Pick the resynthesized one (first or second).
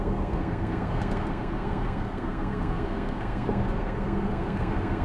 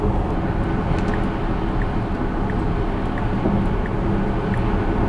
first